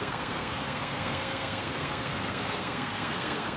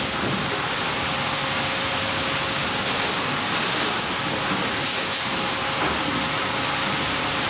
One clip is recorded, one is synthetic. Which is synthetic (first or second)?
first